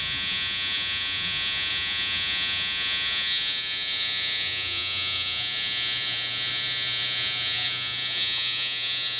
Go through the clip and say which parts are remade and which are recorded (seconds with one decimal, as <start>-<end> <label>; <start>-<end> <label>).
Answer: 0.0-9.2 remade